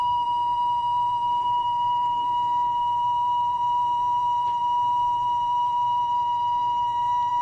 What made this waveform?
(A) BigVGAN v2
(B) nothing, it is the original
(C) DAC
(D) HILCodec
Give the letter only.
A